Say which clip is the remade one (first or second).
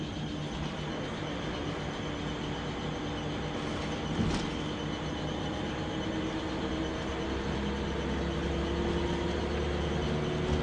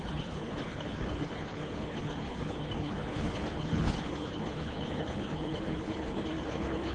second